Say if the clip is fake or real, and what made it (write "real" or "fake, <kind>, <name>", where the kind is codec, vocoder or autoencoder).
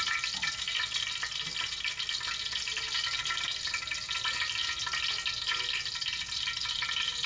real